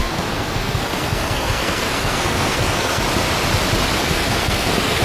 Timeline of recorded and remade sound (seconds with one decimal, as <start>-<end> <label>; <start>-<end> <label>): 0.0-3.0 remade; 3.0-4.0 recorded; 4.0-5.0 remade